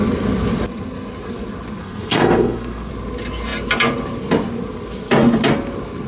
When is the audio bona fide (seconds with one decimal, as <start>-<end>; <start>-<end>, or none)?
0.0-1.8; 2.9-6.1